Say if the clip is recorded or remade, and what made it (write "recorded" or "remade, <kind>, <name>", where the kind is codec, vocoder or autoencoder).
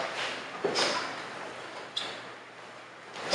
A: recorded